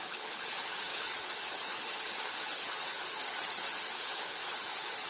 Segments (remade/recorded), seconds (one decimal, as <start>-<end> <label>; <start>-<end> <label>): 0.0-5.1 remade